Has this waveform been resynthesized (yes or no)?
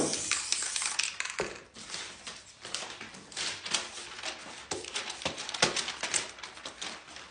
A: no